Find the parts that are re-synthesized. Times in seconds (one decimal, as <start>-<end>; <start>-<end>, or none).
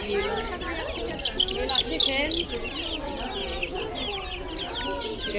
none